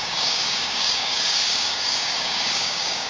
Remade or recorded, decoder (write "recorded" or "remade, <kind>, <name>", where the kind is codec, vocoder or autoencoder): remade, codec, DAC